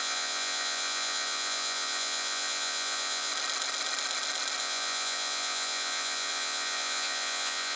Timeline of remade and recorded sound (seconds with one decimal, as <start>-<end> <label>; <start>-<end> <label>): 0.0-3.3 remade; 3.3-4.6 recorded; 4.6-7.8 remade